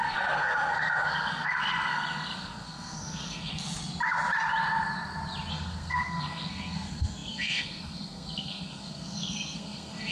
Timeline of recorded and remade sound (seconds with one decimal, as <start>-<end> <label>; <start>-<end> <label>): 0.0-3.5 remade; 3.5-5.5 recorded; 5.5-10.1 remade